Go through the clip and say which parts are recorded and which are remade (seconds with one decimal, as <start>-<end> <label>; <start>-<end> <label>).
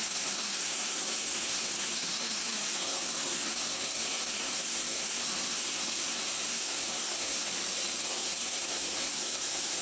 0.0-7.5 remade; 7.5-8.0 recorded; 8.0-9.8 remade